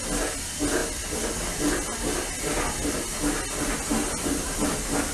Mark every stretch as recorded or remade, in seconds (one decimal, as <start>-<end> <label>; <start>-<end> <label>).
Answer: 0.0-5.1 recorded